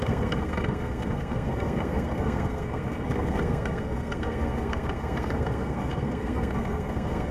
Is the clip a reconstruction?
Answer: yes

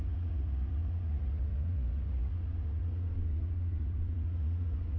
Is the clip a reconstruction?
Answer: yes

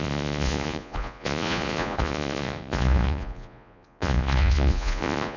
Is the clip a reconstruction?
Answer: yes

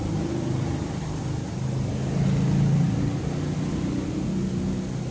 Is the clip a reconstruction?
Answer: no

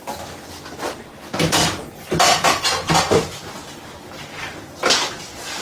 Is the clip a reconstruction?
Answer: no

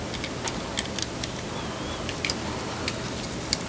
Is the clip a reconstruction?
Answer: no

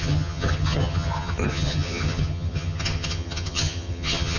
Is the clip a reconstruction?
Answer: yes